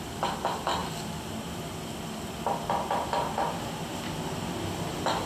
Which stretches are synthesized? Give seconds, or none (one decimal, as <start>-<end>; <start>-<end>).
none